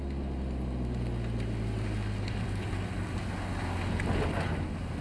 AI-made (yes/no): no